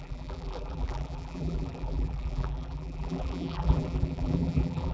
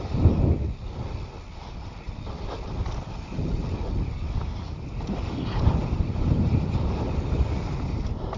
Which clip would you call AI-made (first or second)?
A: first